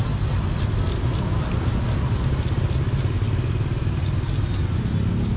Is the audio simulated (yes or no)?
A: no